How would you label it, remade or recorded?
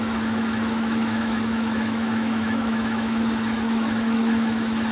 remade